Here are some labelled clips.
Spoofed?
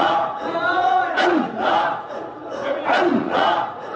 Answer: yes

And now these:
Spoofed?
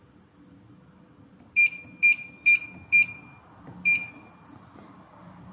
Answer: no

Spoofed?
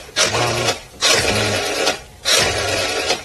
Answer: no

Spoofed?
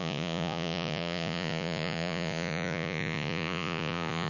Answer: yes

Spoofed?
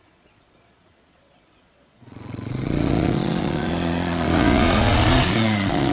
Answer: yes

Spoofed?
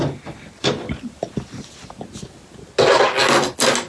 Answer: no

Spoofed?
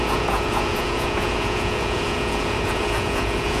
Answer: yes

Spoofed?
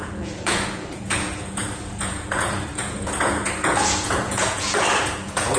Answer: yes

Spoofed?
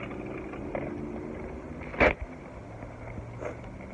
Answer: no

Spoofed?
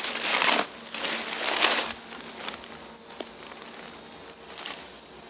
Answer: no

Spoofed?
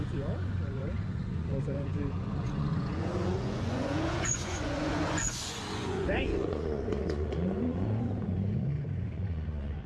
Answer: yes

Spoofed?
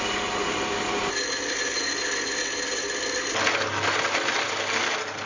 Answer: no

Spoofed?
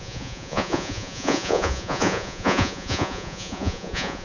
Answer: yes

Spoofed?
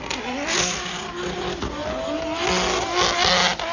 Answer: no